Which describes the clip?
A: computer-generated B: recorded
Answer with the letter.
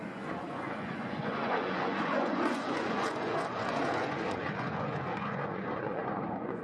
A